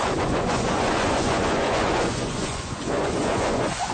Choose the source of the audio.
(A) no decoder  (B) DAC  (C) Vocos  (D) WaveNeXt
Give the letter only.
C